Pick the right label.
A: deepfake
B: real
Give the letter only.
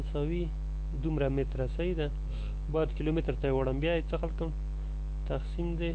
A